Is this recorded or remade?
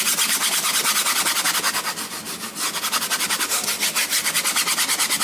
recorded